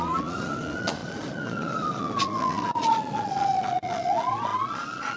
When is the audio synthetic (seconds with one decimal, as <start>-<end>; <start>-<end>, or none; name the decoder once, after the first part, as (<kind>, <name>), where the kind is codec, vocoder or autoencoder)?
0.0-5.2 (vocoder, Vocos)